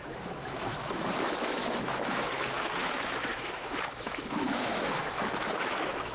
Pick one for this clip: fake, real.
fake